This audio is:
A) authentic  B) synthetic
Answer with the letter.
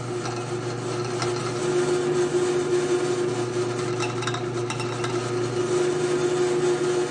A